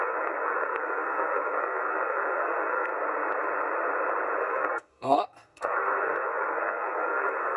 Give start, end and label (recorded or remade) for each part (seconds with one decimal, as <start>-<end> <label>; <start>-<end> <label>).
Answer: 0.0-2.9 remade; 2.9-4.4 recorded; 4.4-7.6 remade